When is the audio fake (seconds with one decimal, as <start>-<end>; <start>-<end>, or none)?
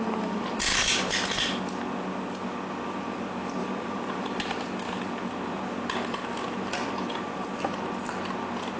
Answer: 3.6-5.3